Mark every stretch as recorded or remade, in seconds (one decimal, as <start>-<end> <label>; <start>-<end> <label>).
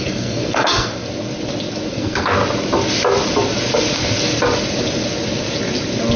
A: 0.0-0.9 remade; 0.9-1.9 recorded; 1.9-2.4 remade; 2.4-6.2 recorded